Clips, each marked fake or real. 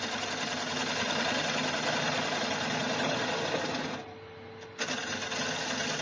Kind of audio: real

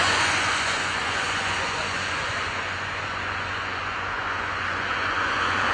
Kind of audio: fake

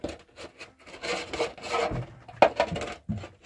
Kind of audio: real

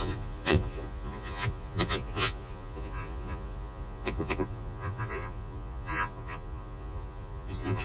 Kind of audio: fake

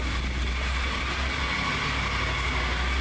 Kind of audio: real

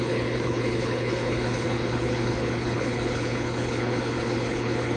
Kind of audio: fake